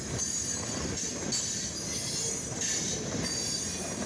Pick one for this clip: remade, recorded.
recorded